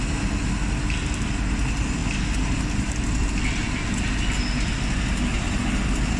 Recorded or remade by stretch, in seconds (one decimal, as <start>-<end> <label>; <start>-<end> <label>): 0.0-6.2 recorded